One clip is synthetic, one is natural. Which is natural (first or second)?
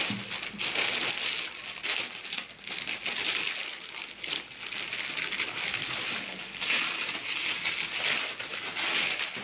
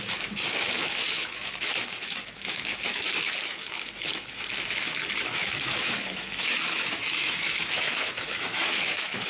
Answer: first